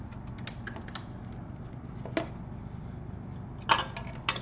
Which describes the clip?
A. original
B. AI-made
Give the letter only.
A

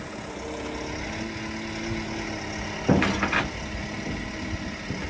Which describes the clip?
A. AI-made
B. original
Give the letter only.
B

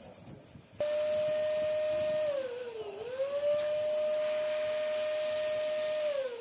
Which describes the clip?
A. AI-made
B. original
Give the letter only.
B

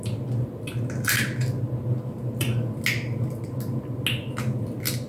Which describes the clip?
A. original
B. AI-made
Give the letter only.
A